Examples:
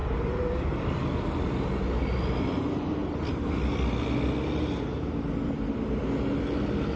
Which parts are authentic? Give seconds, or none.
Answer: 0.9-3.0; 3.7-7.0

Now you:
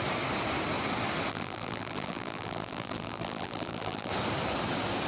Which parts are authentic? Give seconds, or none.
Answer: 0.0-1.3; 4.1-5.1

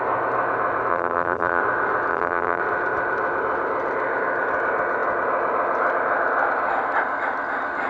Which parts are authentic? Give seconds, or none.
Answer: 0.0-0.9; 1.6-2.1; 2.6-7.9